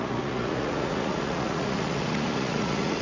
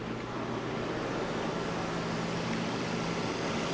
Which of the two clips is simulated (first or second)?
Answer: first